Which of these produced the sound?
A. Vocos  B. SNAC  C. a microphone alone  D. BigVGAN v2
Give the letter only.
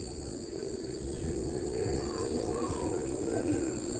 A